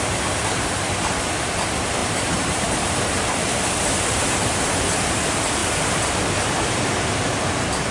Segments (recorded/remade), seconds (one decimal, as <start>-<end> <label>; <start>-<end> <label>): 0.0-2.0 recorded; 2.0-4.6 remade; 4.6-5.6 recorded; 5.6-6.2 remade; 6.2-7.9 recorded